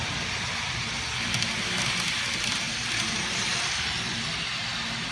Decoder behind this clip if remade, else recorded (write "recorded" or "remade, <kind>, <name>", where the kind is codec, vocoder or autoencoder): recorded